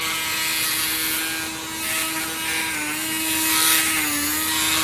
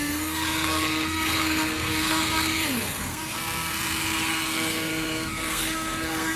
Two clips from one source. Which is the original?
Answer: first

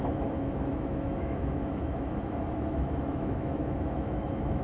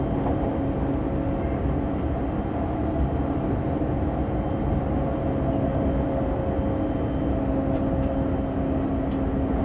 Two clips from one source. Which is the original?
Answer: second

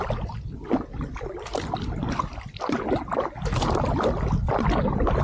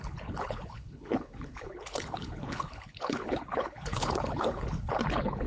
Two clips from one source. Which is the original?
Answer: first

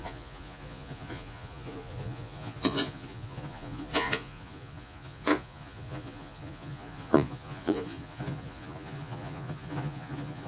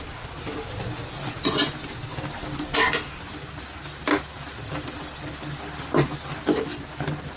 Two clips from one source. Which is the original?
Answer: second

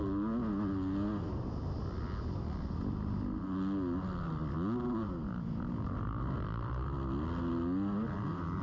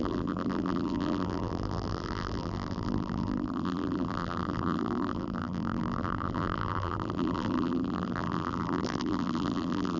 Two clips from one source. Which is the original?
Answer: first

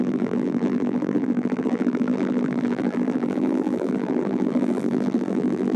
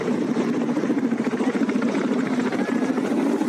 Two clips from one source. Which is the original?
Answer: second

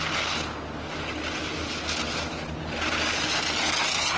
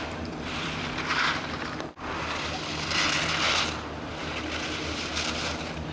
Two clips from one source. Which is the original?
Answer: first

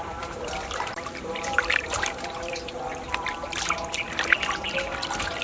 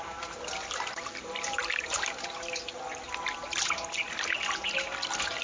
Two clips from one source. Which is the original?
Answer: second